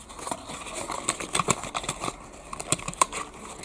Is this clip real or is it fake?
real